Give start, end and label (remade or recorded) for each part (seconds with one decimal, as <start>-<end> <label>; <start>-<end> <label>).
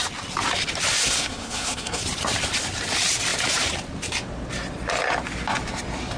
0.0-1.0 recorded; 1.0-2.0 remade; 2.0-6.2 recorded